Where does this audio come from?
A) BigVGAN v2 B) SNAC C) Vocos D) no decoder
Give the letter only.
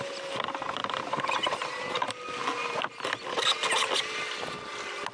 D